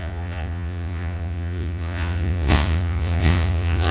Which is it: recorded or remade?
remade